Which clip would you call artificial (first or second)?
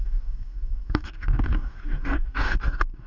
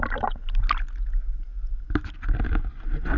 first